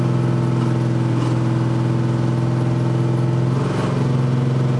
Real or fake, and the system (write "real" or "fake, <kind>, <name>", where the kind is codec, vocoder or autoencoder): real